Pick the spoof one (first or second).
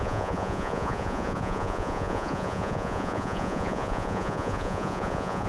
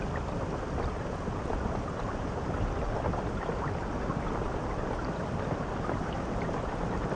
first